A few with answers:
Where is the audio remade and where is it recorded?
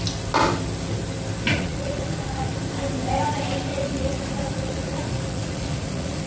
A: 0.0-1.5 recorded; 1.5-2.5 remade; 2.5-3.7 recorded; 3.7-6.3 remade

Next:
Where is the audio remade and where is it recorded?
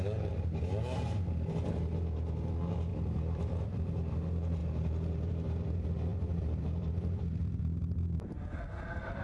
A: 0.0-2.9 recorded; 2.9-4.1 remade; 4.1-6.1 recorded; 6.1-7.6 remade; 7.6-9.2 recorded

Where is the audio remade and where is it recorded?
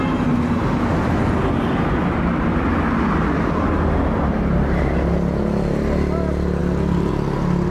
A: 0.0-7.7 recorded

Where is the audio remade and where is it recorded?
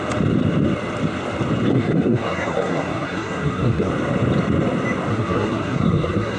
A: 0.0-1.7 recorded; 1.7-3.9 remade; 3.9-5.1 recorded; 5.1-6.4 remade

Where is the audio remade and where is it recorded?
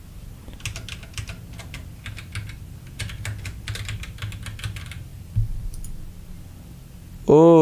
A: 0.0-5.1 recorded; 5.1-6.4 remade; 6.4-7.6 recorded